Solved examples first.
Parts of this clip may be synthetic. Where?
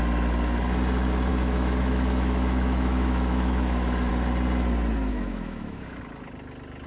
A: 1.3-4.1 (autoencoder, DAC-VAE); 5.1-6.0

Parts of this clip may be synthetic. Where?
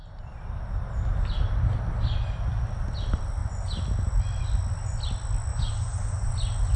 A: 5.5-6.3 (vocoder, BigVGAN v2)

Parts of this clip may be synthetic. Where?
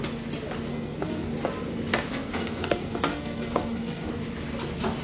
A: 0.7-1.3 (codec, SNAC); 2.1-4.1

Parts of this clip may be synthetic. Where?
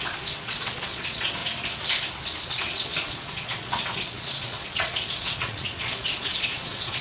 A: 0.0-1.4 (vocoder, Vocos); 2.4-7.0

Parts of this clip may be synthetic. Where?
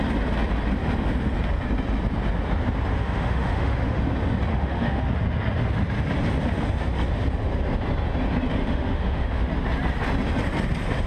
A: 3.0-4.0 (autoencoder, DAC-VAE); 4.5-5.0; 8.5-9.5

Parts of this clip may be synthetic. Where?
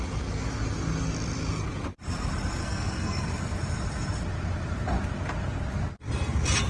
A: 2.6-3.3 (codec, SNAC)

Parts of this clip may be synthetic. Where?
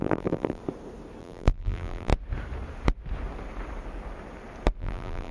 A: 0.0-0.6 (vocoder, BigVGAN v2); 1.2-2.1; 4.8-5.3